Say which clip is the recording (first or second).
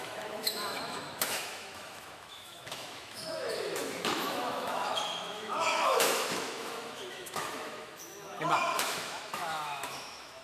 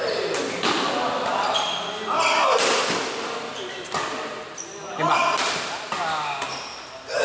second